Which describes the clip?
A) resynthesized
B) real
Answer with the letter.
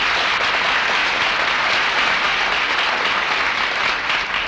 A